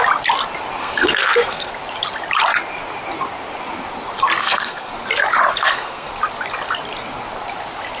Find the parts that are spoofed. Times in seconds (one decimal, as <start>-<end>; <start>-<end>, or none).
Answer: 0.8-1.7; 4.4-4.9; 5.5-6.1